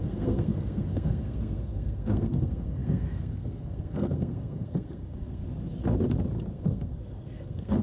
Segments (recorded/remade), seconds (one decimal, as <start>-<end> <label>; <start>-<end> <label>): 0.0-5.4 remade; 5.4-6.5 recorded; 6.5-7.8 remade